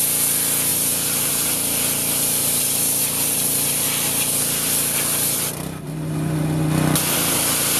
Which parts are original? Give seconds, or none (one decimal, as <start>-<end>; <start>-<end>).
0.0-0.7; 1.3-7.8